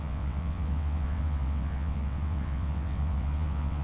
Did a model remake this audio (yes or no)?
yes